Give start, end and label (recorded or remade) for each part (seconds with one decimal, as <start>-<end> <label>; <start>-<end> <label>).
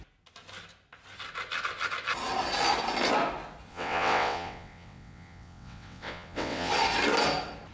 0.0-3.7 recorded; 3.7-6.7 remade; 6.7-7.7 recorded